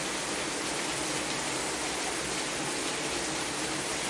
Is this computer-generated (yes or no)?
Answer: no